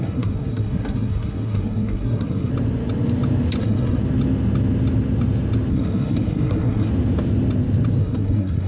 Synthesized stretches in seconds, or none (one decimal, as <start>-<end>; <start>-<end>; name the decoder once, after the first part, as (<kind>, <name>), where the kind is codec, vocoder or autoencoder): 0.0-2.5 (codec, SNAC); 3.6-4.0; 5.7-6.9; 8.0-8.7